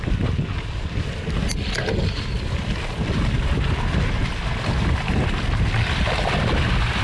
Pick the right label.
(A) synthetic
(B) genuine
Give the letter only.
B